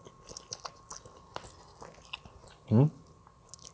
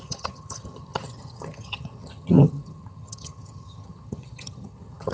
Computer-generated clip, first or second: second